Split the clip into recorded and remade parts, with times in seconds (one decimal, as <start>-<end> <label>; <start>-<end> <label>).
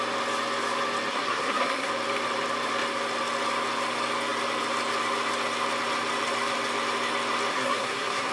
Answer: 0.0-1.1 recorded; 1.1-1.9 remade; 1.9-7.5 recorded; 7.5-8.3 remade